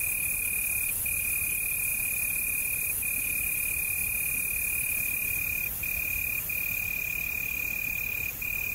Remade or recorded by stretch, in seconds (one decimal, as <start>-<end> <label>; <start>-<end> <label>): 0.0-8.7 recorded